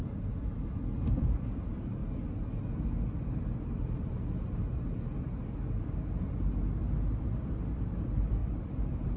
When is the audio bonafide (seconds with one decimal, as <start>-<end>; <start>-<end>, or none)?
2.0-7.2